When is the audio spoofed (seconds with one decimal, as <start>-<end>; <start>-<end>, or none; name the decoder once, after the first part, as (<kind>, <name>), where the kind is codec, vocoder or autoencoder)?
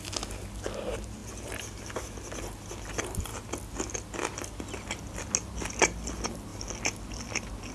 none